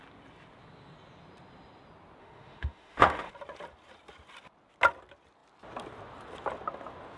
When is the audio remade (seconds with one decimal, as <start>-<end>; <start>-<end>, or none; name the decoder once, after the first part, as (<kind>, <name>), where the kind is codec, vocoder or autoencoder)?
2.2-3.3 (autoencoder, DAC-VAE)

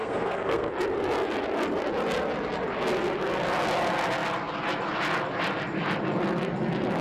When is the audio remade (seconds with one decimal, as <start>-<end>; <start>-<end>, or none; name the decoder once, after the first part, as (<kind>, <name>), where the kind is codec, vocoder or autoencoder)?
0.0-0.7 (codec, SNAC)

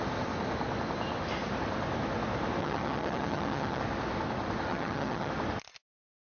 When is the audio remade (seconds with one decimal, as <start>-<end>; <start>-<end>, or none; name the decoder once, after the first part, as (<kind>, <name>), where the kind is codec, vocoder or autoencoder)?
2.6-3.8 (vocoder, HiFi-GAN); 4.7-5.3

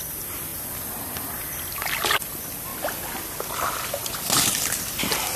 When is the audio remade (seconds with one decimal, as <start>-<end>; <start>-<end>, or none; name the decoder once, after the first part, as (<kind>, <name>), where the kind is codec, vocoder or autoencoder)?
none

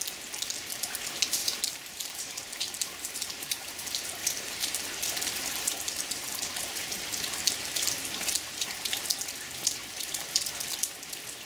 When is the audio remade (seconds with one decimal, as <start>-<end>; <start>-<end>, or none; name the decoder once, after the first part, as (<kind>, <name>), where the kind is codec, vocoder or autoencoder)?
1.4-3.8 (vocoder, BigVGAN v2); 4.2-9.1; 9.8-10.4

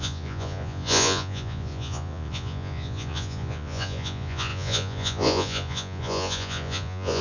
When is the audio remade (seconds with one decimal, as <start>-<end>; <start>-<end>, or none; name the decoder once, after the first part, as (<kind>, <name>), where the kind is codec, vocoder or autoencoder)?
0.0-7.2 (vocoder, Vocos)

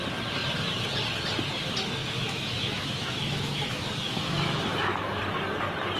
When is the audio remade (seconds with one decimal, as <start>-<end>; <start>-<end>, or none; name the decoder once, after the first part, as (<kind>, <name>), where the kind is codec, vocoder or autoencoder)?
2.0-5.2 (autoencoder, DAC-VAE)